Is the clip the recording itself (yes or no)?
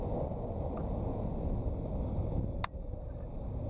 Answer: yes